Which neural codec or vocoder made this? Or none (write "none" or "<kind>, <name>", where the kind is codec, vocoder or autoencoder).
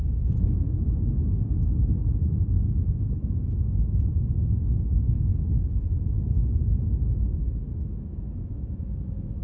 autoencoder, DAC-VAE